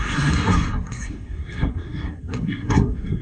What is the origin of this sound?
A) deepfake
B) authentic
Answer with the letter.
A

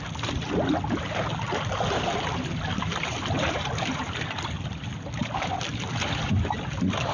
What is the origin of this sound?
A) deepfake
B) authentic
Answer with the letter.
B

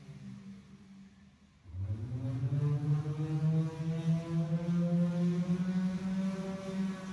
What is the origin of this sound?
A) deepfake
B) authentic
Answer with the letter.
B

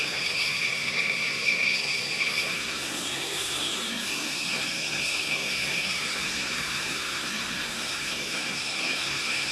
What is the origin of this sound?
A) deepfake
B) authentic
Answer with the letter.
A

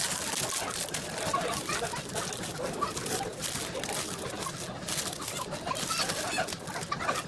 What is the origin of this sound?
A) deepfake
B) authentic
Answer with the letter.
B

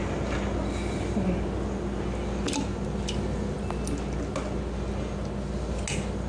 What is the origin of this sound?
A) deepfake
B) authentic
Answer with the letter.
B